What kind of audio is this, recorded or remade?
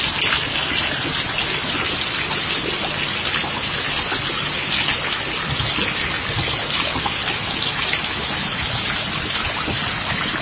recorded